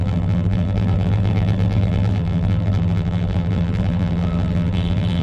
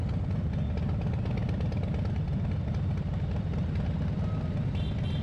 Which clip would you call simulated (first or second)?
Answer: first